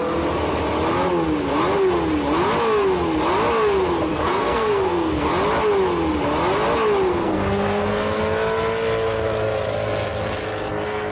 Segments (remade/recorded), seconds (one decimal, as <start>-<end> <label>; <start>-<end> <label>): 0.0-4.1 recorded; 4.1-5.3 remade; 5.3-7.1 recorded; 7.1-8.2 remade; 8.2-11.1 recorded